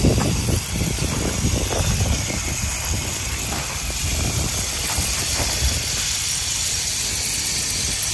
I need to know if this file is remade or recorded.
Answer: recorded